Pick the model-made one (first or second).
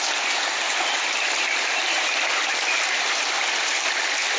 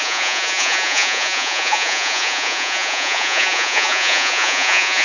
second